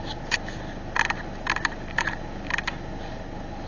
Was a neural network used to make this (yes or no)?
no